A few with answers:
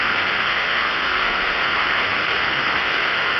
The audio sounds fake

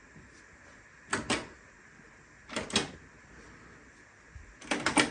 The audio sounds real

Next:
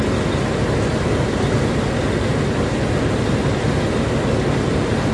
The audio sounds real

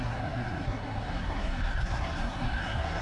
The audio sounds fake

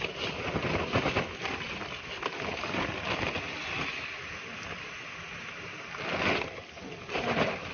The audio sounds real